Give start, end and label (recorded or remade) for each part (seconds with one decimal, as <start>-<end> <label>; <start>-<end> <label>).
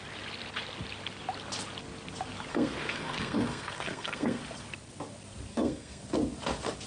0.0-2.5 recorded; 2.5-4.4 remade; 4.4-5.5 recorded; 5.5-6.0 remade; 6.0-6.9 recorded